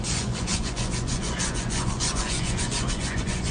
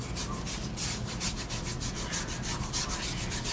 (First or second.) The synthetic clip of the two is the first